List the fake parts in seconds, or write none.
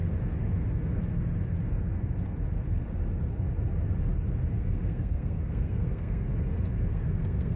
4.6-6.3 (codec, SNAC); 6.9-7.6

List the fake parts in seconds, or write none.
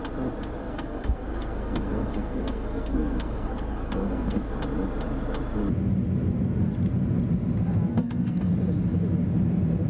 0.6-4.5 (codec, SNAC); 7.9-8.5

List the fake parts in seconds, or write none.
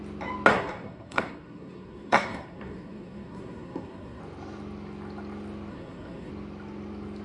0.5-4.2 (codec, SNAC); 5.7-6.3